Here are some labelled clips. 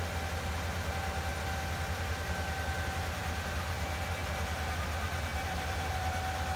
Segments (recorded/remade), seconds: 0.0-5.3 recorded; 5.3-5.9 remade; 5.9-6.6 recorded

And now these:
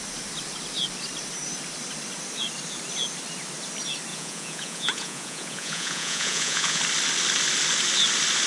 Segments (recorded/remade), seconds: 0.0-4.1 recorded; 4.1-6.8 remade; 6.8-8.5 recorded

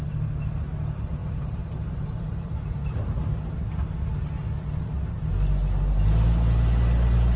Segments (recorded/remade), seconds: 0.0-1.2 recorded; 1.2-3.2 remade; 3.2-7.4 recorded

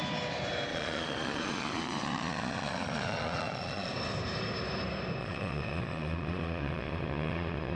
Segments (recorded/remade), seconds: 0.0-0.7 recorded; 0.7-3.9 remade; 3.9-5.2 recorded; 5.2-7.8 remade

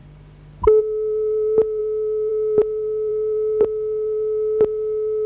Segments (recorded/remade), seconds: 0.0-0.8 recorded; 0.8-1.8 remade; 1.8-2.3 recorded; 2.3-5.3 remade

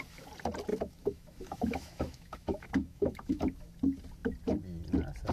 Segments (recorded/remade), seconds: 0.0-0.7 recorded; 0.7-3.7 remade; 3.7-5.3 recorded

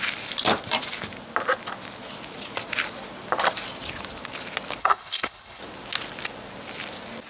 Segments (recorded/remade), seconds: 0.0-4.8 recorded; 4.8-5.6 remade; 5.6-7.3 recorded

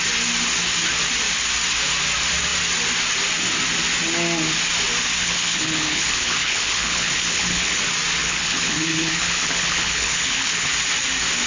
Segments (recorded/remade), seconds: 0.0-5.2 recorded; 5.2-7.8 remade; 7.8-8.2 recorded; 8.2-10.7 remade; 10.7-11.5 recorded